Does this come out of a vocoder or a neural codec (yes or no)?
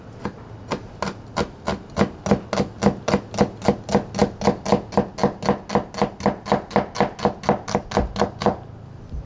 no